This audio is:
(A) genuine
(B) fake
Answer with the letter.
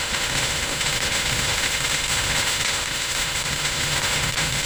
B